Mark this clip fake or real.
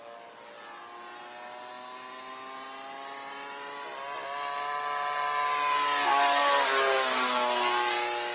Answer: real